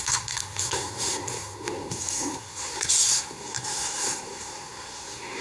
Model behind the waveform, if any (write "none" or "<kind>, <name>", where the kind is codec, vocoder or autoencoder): codec, SNAC